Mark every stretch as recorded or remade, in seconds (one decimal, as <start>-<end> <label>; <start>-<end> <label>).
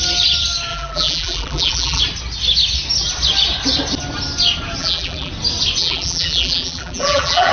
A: 0.0-0.7 recorded; 0.7-2.0 remade; 2.0-4.8 recorded; 4.8-5.3 remade; 5.3-5.8 recorded; 5.8-7.5 remade